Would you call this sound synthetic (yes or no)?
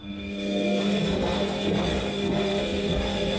yes